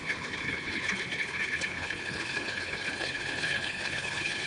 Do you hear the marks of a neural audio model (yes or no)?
yes